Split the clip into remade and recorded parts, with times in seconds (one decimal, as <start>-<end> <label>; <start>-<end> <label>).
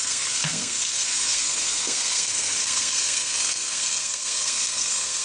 0.0-5.2 remade